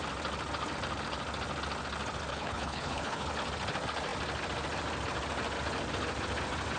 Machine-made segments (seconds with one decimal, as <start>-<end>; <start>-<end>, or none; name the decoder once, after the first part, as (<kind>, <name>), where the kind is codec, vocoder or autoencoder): 2.3-3.3 (codec, HILCodec)